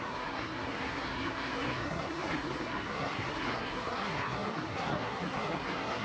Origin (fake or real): fake